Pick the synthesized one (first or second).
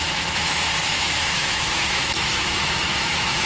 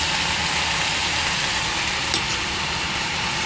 first